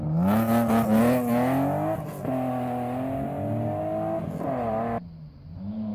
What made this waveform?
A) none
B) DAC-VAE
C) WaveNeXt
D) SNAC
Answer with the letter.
A